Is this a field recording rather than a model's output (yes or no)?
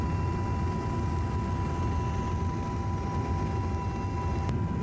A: yes